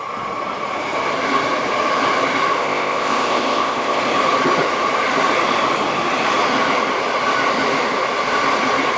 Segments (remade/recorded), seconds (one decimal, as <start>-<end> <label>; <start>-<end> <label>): 0.0-2.6 recorded; 2.6-4.0 remade; 4.0-9.0 recorded